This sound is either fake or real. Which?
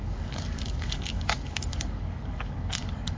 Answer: fake